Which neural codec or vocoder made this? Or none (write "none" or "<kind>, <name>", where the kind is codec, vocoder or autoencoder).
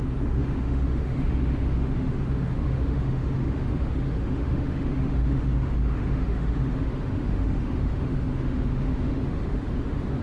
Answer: autoencoder, DAC-VAE